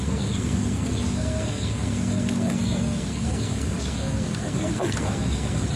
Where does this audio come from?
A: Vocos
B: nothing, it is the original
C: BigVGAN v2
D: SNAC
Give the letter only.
D